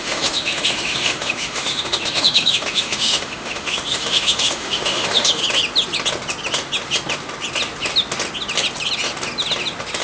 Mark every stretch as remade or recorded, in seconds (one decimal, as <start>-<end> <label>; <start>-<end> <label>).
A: 0.0-5.4 remade; 5.4-10.0 recorded

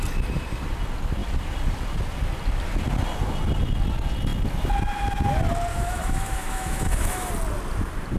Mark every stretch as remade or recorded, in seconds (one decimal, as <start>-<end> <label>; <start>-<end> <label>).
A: 0.0-5.7 recorded; 5.7-7.3 remade; 7.3-8.2 recorded

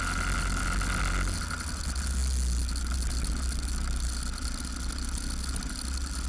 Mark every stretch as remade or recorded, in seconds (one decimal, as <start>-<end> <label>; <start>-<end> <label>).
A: 0.0-6.3 recorded

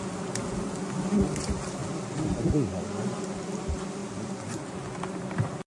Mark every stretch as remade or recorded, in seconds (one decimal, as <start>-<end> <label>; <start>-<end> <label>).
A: 0.0-5.7 recorded

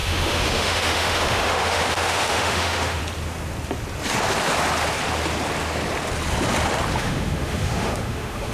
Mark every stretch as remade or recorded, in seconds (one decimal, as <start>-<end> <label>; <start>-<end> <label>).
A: 0.0-3.0 remade; 3.0-6.9 recorded; 6.9-8.5 remade